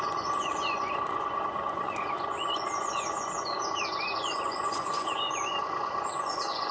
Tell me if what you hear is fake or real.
fake